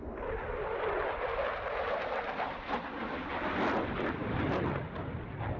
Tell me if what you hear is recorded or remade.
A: recorded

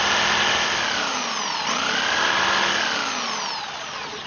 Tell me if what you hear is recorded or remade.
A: recorded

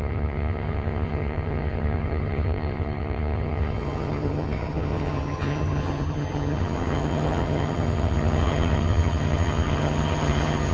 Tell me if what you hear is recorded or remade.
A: remade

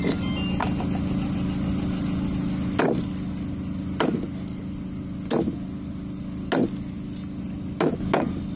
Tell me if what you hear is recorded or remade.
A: recorded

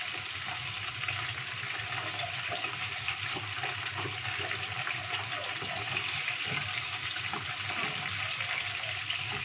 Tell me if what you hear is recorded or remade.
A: remade